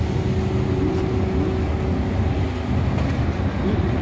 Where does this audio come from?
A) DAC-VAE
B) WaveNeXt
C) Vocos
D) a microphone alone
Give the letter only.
D